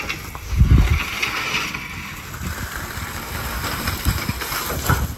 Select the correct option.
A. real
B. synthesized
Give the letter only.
A